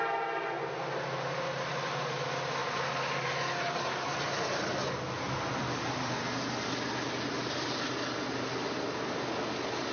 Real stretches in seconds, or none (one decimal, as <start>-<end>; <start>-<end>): 0.0-9.9